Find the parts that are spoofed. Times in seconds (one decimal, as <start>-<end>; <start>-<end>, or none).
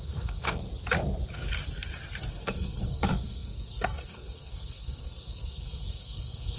0.0-0.7; 2.3-6.6